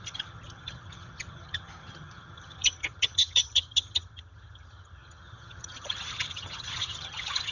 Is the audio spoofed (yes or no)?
yes